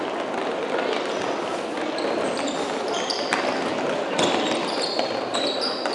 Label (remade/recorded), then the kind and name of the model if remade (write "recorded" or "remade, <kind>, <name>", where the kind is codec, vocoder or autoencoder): recorded